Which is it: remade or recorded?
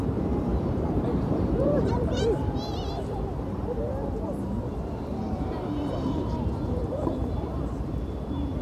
remade